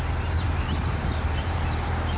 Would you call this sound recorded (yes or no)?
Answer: no